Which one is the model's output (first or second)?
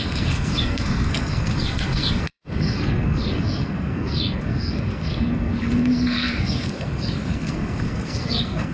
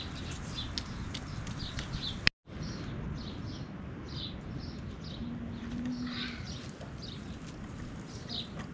first